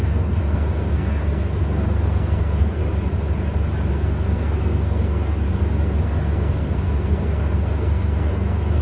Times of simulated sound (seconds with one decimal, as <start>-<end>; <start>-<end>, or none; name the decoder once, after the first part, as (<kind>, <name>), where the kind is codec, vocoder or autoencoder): 0.0-2.8 (codec, SNAC); 3.9-8.8